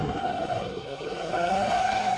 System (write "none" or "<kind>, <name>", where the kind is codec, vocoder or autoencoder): codec, SNAC